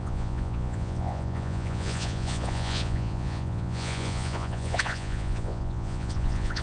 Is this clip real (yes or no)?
no